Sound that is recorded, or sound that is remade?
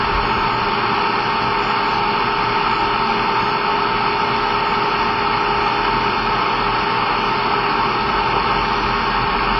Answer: recorded